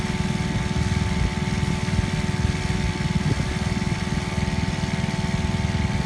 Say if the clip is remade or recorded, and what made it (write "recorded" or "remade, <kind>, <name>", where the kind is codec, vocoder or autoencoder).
recorded